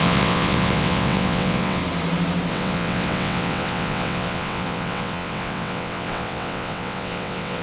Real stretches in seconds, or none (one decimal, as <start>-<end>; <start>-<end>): 1.8-2.5